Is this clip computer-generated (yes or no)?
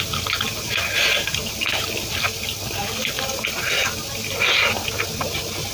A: no